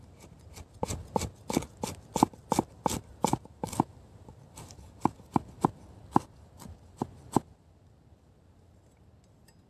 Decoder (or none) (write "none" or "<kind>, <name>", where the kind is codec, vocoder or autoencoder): none